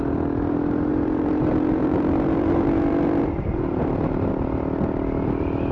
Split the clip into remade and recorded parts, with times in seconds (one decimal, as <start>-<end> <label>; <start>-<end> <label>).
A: 0.0-0.9 recorded; 0.9-4.3 remade; 4.3-5.7 recorded